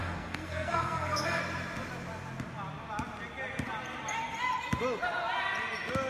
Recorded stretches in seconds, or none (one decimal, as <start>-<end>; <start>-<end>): 1.4-6.1